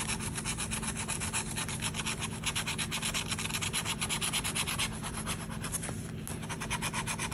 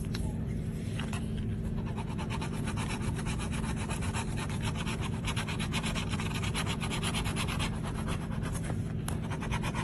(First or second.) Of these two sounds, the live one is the first